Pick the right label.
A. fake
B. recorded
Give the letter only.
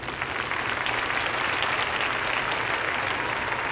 B